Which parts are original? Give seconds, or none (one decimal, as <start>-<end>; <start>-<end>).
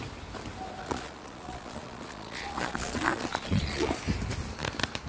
0.0-0.8; 3.9-5.1